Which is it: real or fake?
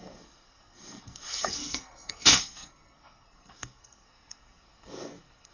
fake